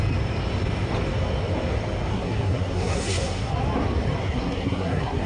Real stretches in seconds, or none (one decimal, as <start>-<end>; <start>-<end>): 0.0-2.1; 3.5-4.2